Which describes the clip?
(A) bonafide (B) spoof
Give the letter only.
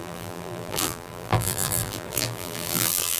B